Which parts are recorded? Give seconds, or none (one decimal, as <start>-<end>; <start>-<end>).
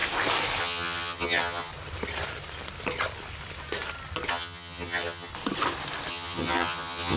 0.0-0.6; 1.7-4.3; 5.3-6.1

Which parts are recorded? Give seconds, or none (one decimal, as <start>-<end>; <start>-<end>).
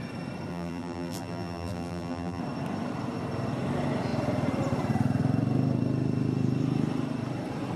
0.0-0.5; 2.4-7.8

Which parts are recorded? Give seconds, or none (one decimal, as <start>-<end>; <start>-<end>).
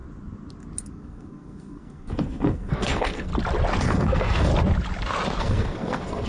0.0-0.9; 3.3-3.8; 4.5-5.4